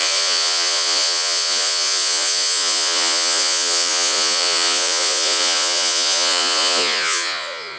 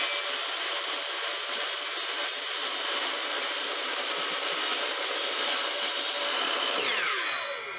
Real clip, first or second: second